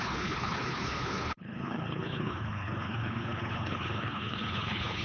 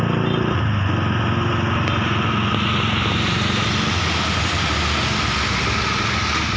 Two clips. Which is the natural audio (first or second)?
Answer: second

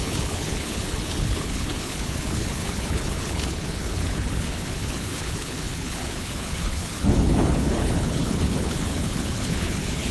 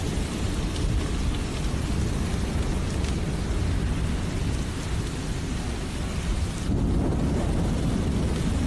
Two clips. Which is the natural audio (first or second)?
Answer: second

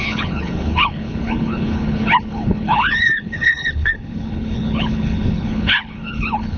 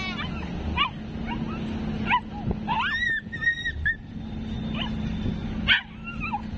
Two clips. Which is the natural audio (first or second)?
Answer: second